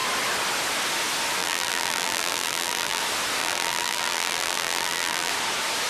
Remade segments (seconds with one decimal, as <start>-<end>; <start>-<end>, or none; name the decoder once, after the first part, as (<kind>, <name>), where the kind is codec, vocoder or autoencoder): 1.4-3.0 (vocoder, BigVGAN v2); 3.4-5.3